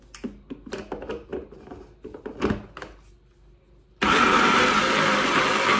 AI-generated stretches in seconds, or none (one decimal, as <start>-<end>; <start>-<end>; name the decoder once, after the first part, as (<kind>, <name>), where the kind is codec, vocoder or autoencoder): none